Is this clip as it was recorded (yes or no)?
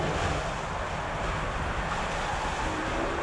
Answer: yes